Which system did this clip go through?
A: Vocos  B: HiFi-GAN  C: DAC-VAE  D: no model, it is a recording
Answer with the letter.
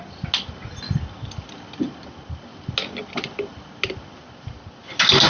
D